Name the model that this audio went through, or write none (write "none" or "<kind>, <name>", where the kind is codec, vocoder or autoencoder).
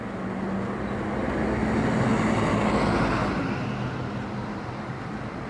none